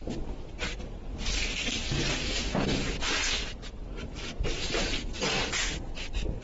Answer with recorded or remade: recorded